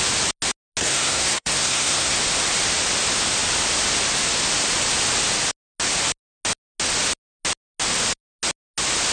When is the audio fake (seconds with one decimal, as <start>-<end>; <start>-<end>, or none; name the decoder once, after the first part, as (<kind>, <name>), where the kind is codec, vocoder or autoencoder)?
0.8-2.2 (codec, SNAC)

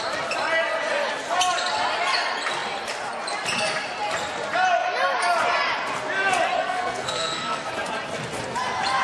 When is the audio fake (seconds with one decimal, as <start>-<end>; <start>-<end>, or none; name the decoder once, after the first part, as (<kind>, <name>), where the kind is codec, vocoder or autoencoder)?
6.6-7.7 (codec, SNAC)

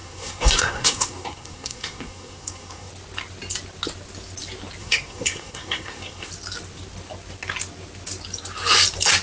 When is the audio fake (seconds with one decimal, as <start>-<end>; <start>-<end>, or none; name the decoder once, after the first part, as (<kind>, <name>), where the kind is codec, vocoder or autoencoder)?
0.0-2.9 (codec, SNAC); 4.8-6.3

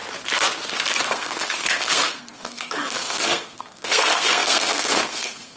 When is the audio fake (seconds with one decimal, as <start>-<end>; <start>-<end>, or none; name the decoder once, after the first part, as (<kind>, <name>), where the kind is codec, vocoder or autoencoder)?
1.1-5.6 (codec, SNAC)

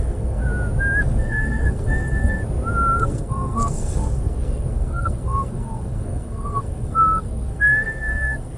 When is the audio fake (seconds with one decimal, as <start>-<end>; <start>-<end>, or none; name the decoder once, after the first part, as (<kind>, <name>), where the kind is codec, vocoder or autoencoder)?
0.0-0.4 (codec, SNAC); 1.0-2.4; 3.0-8.6

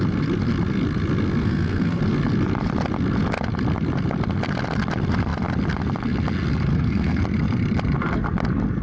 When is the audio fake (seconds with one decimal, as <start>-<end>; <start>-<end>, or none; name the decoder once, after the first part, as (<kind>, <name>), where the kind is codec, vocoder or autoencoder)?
1.4-2.0 (codec, SNAC); 6.7-7.2

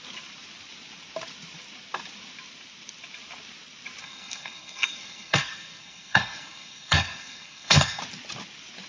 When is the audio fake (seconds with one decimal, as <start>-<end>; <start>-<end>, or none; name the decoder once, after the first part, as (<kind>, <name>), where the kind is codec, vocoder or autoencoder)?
4.0-8.0 (codec, SNAC)

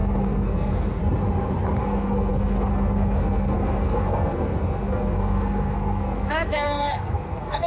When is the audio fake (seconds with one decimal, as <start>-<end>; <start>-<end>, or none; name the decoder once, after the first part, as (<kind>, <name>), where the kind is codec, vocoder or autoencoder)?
0.0-1.0 (codec, SNAC); 1.8-7.7